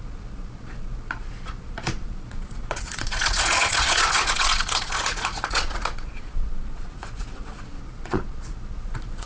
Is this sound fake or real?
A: fake